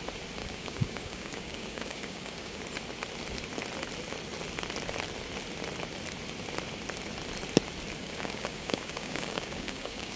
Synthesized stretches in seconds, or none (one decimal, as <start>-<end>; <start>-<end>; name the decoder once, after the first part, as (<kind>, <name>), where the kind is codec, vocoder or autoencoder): 0.4-2.6 (codec, DAC); 8.0-10.2